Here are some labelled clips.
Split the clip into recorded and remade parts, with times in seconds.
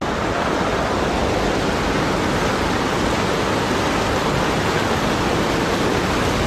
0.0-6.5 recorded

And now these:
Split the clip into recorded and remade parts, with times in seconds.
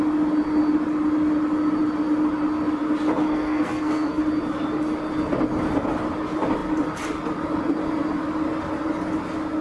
0.0-3.2 recorded; 3.2-4.2 remade; 4.2-9.6 recorded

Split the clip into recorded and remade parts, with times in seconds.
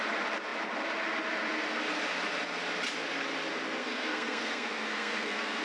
0.0-3.8 recorded; 3.8-5.6 remade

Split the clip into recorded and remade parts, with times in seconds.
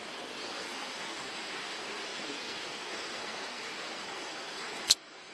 0.0-5.3 remade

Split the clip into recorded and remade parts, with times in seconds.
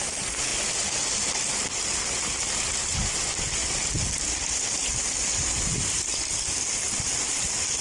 0.0-7.8 recorded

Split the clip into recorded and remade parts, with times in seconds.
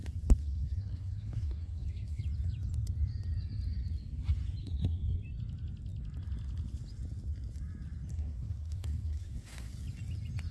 0.0-0.4 recorded; 0.4-2.2 remade; 2.2-4.6 recorded; 4.6-5.2 remade; 5.2-8.1 recorded; 8.1-9.7 remade; 9.7-10.5 recorded